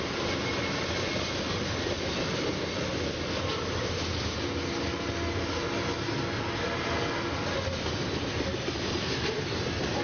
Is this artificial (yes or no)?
no